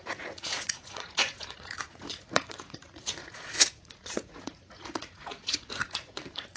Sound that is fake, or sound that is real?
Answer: fake